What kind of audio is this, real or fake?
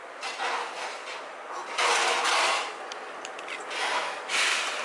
real